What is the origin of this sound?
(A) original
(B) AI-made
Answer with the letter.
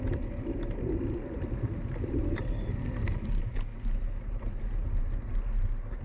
A